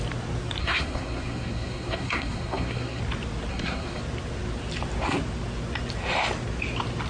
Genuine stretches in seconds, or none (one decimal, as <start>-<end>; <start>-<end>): 0.0-0.6; 3.0-3.5; 4.0-7.1